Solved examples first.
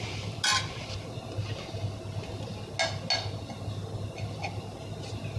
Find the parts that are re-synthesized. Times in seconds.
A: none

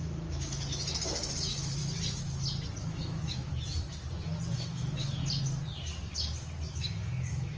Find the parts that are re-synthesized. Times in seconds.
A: 0.0-1.8 (autoencoder, DAC-VAE); 2.8-3.7; 4.5-5.2; 6.7-7.6